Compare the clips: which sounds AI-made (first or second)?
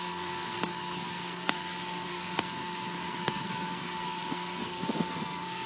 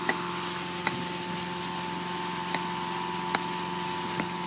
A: first